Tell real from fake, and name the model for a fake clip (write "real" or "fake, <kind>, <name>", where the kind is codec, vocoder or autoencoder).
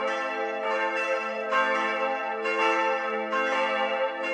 real